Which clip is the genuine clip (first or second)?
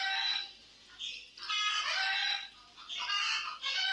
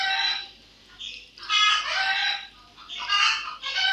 first